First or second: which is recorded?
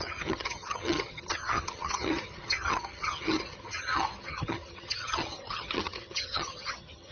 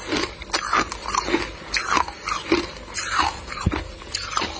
second